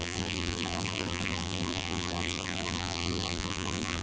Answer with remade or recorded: remade